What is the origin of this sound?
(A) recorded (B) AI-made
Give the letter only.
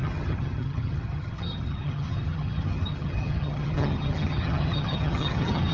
B